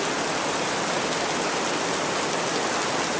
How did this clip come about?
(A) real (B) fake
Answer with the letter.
A